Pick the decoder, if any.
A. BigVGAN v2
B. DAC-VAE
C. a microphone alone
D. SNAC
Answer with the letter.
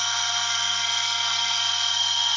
D